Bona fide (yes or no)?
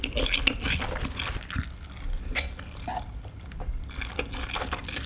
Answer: yes